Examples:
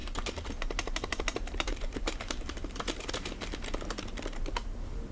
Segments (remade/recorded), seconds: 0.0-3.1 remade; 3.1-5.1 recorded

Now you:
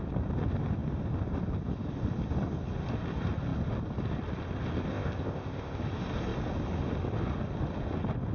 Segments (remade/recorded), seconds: 0.0-4.9 recorded; 4.9-5.8 remade; 5.8-8.3 recorded